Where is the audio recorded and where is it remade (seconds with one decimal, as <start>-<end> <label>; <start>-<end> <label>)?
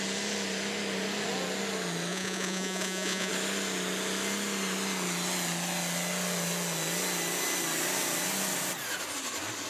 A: 0.0-2.1 recorded; 2.1-3.3 remade; 3.3-9.7 recorded